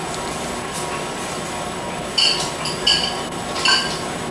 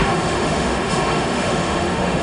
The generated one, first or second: second